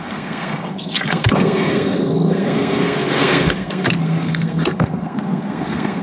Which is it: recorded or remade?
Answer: remade